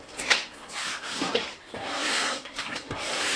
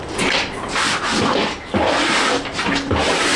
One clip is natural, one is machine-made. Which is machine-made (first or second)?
first